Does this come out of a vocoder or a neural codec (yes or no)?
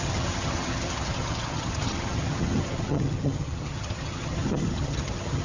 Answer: yes